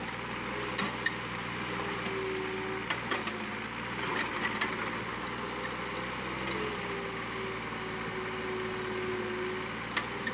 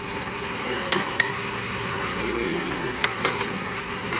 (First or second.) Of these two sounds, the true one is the first